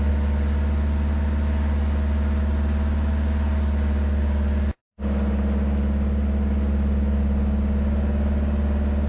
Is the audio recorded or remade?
recorded